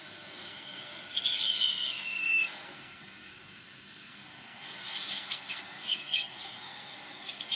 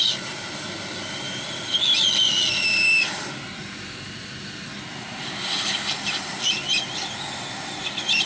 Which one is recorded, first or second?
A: second